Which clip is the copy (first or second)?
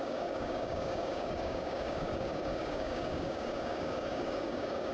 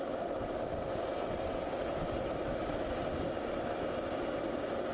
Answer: first